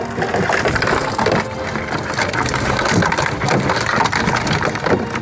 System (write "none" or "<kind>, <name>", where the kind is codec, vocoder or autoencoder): none